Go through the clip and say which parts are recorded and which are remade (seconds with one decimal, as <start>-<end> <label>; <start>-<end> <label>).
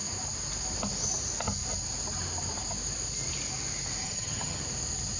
0.0-4.0 recorded; 4.0-4.6 remade; 4.6-5.2 recorded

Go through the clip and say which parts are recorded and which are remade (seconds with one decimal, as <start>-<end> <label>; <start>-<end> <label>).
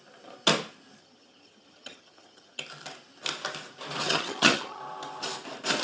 0.0-1.0 recorded; 1.0-2.6 remade; 2.6-4.0 recorded; 4.0-4.8 remade; 4.8-5.8 recorded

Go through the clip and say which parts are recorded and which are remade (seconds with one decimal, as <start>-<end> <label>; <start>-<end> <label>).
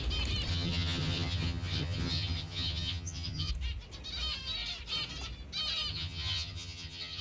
0.0-0.5 recorded; 0.5-3.5 remade; 3.5-5.9 recorded; 5.9-7.2 remade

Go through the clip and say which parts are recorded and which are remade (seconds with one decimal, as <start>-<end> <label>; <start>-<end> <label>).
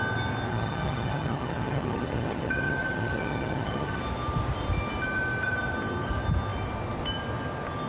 0.0-0.5 recorded; 0.5-4.0 remade; 4.0-7.9 recorded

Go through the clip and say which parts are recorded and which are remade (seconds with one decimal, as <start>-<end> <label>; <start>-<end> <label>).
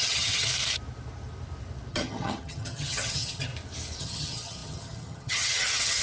0.0-0.5 remade; 0.5-1.9 recorded; 1.9-3.5 remade; 3.5-4.0 recorded; 4.0-6.0 remade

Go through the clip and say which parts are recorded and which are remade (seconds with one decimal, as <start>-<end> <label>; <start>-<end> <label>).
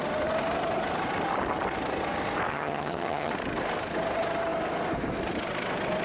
0.0-2.5 recorded; 2.5-3.3 remade; 3.3-6.0 recorded